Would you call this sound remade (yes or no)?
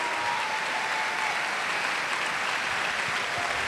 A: no